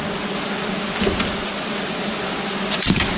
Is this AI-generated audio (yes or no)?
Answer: no